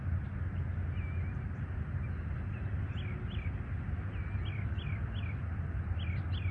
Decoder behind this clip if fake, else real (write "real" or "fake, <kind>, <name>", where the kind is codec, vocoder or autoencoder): real